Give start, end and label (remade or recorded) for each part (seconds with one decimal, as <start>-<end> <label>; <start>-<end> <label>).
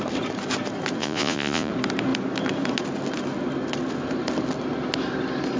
0.0-1.0 recorded; 1.0-1.7 remade; 1.7-5.6 recorded